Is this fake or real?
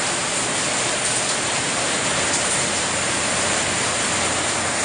real